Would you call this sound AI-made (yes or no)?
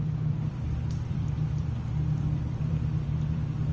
yes